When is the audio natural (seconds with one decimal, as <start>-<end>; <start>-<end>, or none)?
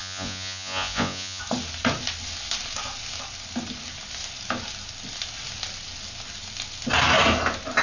1.4-7.8